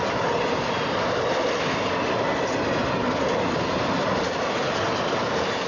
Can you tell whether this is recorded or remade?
recorded